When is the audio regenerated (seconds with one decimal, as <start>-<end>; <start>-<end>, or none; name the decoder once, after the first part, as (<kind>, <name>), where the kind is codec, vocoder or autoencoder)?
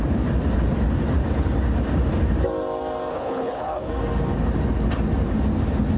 3.1-3.9 (codec, HILCodec)